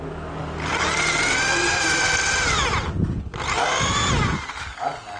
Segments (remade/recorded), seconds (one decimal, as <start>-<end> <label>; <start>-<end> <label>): 0.0-5.2 recorded